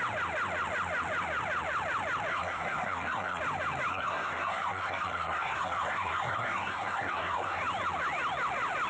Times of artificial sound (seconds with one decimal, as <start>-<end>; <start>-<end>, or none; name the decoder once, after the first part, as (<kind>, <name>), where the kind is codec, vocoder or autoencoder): 2.3-3.4 (codec, SNAC); 3.9-7.6

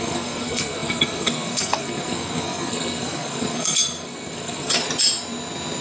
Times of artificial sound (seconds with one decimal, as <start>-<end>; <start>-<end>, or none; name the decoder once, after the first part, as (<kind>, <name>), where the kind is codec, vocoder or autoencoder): 0.0-4.7 (codec, SNAC)

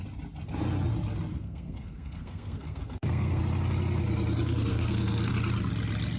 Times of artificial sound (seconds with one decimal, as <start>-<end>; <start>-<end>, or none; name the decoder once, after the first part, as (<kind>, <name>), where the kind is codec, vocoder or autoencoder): 1.3-3.4 (codec, SNAC); 4.7-5.3

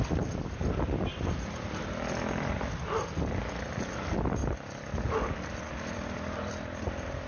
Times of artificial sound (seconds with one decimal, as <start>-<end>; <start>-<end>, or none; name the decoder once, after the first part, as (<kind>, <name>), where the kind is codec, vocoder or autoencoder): none

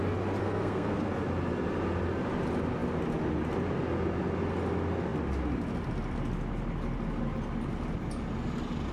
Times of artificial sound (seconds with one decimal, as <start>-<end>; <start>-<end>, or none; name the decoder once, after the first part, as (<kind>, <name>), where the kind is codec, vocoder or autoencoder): 0.4-1.0 (codec, SNAC)